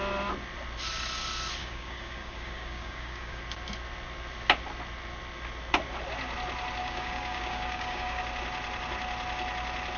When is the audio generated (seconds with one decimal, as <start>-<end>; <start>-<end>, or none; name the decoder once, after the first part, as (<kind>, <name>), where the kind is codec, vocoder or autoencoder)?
1.6-3.4 (codec, DAC); 6.8-8.2